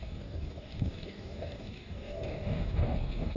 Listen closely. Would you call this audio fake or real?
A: fake